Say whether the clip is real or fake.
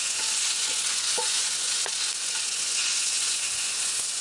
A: fake